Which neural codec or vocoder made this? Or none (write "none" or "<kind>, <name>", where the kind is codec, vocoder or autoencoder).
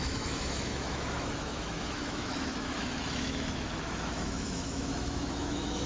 autoencoder, DAC-VAE